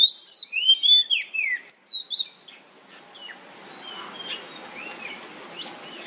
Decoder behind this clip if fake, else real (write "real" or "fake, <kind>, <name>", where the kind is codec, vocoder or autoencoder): real